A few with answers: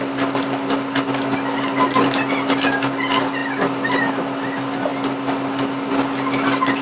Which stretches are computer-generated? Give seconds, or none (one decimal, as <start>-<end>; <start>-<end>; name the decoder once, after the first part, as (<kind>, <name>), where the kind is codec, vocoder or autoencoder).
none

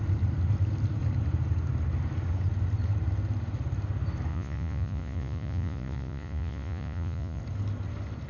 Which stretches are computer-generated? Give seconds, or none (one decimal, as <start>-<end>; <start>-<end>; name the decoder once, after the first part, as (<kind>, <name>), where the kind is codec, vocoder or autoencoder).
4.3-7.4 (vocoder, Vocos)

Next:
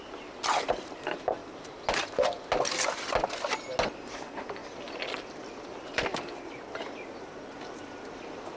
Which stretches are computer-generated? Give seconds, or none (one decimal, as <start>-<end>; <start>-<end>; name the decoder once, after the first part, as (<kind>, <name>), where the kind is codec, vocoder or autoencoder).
none

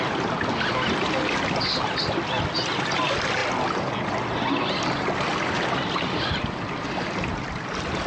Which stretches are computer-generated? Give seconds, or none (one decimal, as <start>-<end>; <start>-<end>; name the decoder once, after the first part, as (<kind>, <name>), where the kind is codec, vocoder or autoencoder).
none

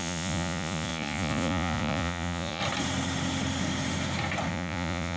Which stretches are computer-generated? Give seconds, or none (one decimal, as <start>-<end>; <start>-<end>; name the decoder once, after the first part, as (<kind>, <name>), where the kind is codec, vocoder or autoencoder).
0.0-2.6 (vocoder, Vocos); 4.5-5.2

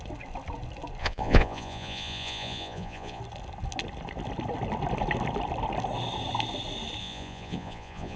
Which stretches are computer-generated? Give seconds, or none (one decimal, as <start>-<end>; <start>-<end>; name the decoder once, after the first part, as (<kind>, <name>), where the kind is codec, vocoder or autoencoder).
1.0-3.2 (vocoder, Vocos); 7.0-8.2

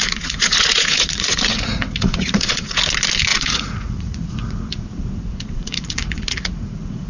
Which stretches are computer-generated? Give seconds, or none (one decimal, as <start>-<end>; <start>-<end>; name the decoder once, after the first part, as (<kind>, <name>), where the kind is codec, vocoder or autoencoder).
0.0-2.8 (vocoder, Vocos); 3.3-7.1

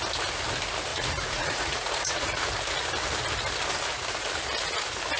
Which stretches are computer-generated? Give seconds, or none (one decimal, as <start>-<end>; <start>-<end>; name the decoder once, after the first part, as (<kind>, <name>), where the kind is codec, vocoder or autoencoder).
0.9-2.5 (vocoder, Vocos)